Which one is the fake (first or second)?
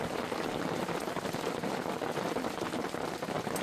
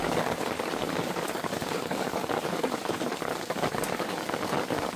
second